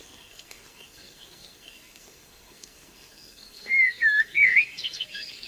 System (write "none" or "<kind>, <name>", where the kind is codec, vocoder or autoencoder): codec, SNAC